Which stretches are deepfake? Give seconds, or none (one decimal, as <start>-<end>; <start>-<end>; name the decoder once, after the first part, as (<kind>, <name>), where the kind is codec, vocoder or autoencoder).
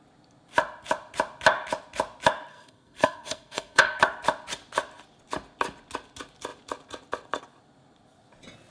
2.5-4.0 (codec, SNAC)